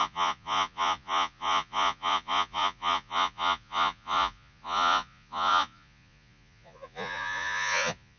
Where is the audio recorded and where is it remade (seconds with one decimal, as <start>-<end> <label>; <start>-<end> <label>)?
0.0-8.2 remade